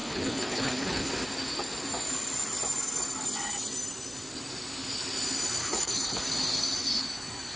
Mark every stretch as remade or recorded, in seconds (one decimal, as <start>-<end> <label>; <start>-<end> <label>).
0.0-1.1 remade; 1.1-5.6 recorded; 5.6-6.2 remade; 6.2-7.6 recorded